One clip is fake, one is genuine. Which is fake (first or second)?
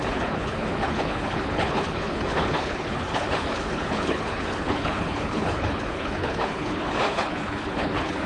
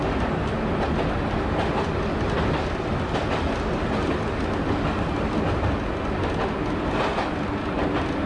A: first